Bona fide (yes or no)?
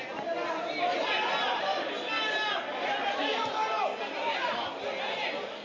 yes